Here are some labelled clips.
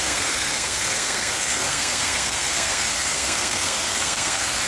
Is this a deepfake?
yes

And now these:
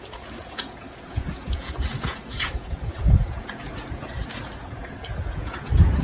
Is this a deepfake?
yes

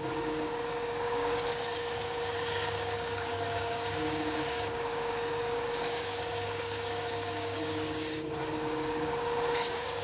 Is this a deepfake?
yes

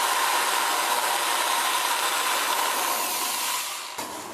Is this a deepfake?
no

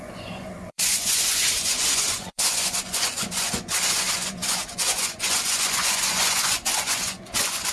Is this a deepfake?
yes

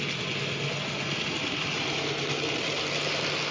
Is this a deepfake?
no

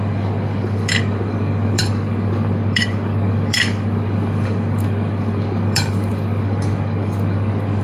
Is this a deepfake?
yes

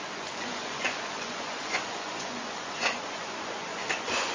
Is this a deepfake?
yes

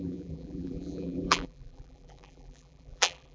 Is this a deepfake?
yes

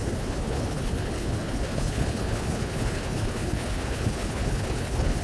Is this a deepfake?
yes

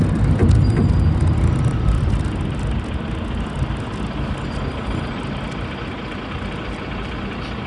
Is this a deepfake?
no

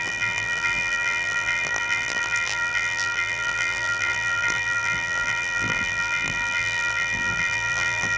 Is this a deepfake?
yes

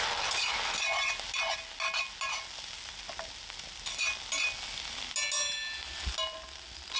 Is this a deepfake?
no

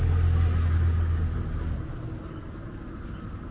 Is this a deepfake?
no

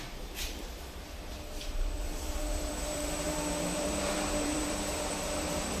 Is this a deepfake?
yes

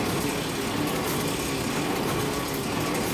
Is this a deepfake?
no